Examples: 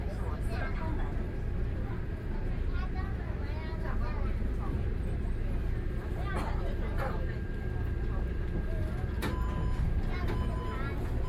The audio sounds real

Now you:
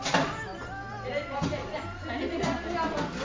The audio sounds real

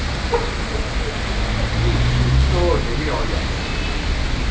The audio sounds real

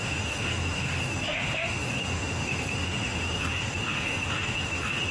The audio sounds fake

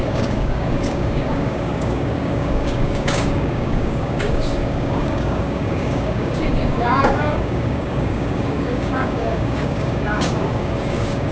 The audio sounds fake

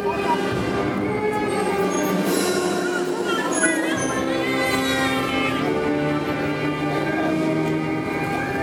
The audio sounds real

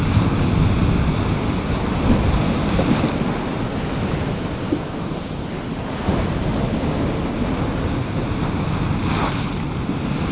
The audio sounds real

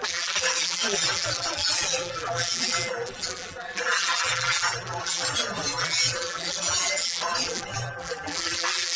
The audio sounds fake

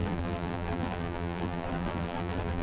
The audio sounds fake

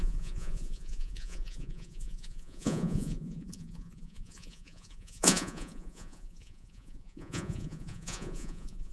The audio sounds fake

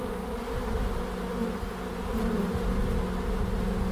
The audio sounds real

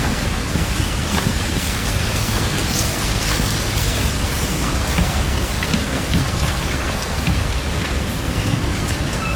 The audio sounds fake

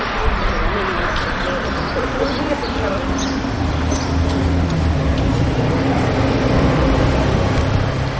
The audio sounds real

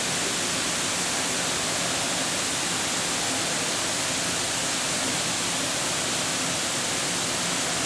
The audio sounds real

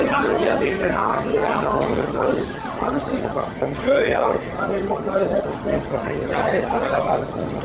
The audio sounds fake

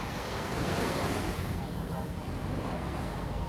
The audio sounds fake